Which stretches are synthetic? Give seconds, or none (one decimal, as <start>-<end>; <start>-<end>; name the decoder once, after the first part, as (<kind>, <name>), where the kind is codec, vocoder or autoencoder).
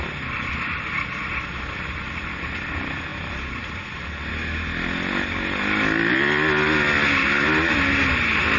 none